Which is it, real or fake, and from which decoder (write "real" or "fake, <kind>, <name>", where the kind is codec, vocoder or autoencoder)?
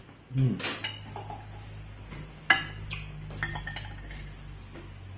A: real